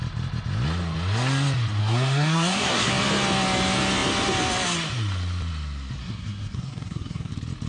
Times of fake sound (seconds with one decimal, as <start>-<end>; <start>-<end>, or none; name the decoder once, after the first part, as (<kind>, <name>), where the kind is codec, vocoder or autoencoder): 1.8-2.9 (codec, SNAC); 6.0-7.3